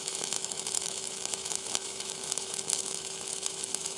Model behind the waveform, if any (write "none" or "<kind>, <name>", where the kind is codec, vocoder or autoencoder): autoencoder, DAC-VAE